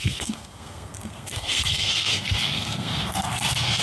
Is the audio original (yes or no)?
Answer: no